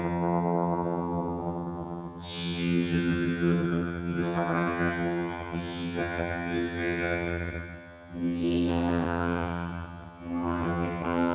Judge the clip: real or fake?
fake